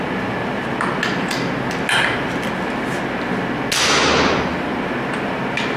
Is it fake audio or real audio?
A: real